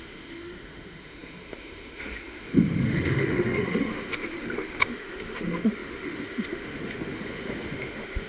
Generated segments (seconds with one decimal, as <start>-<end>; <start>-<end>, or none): 0.0-8.3